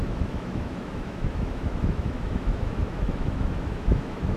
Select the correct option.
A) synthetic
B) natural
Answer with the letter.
A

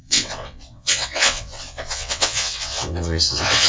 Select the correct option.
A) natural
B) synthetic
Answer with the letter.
B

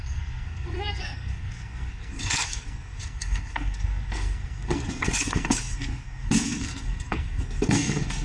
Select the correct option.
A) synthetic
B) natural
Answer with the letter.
A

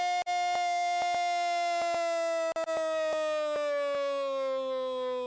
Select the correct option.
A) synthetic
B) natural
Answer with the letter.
B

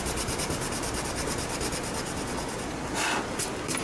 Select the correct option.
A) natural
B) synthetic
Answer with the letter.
A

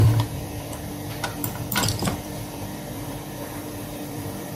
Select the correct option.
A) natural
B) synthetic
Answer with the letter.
B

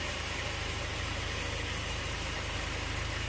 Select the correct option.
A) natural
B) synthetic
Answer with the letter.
B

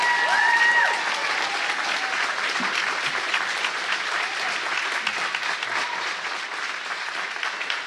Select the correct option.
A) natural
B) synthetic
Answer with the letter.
A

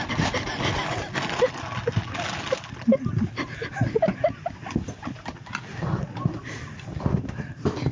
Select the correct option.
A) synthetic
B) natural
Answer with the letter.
B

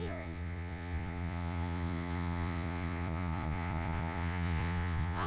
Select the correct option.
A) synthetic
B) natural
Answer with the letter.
A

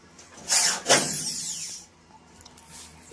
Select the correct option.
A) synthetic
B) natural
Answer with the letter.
B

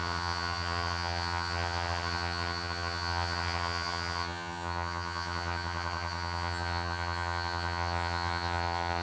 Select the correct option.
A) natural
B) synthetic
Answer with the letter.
B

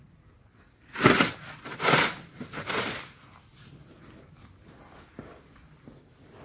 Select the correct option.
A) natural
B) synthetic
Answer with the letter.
A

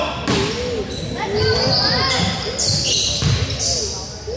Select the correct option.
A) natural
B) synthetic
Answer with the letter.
A